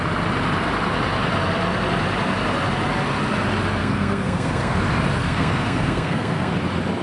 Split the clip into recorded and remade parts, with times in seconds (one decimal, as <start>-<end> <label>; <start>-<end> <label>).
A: 0.0-3.8 recorded; 3.8-4.8 remade; 4.8-5.2 recorded; 5.2-6.6 remade; 6.6-7.0 recorded